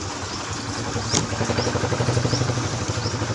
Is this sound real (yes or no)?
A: yes